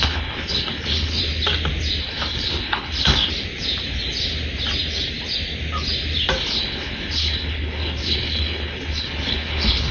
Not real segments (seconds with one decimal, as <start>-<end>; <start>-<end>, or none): 0.0-1.2; 2.0-3.3; 6.4-9.9